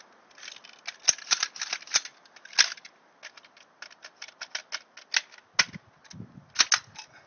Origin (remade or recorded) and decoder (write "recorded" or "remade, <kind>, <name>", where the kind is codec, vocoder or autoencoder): recorded